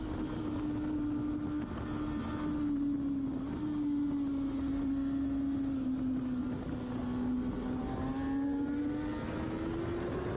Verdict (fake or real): real